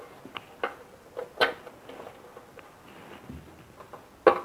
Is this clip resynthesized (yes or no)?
no